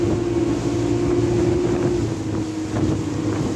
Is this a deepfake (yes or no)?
no